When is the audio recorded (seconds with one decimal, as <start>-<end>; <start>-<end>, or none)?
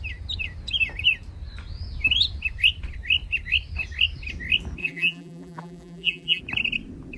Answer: 0.0-4.8; 6.4-7.2